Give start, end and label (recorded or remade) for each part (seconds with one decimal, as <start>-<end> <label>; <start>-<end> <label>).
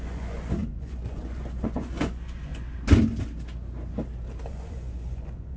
0.0-2.5 remade; 2.5-4.5 recorded; 4.5-5.6 remade